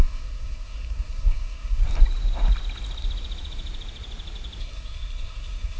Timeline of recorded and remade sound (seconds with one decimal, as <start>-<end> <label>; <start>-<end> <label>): 0.0-1.8 remade; 1.8-4.6 recorded; 4.6-5.8 remade